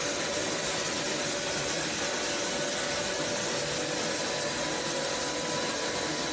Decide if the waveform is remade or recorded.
recorded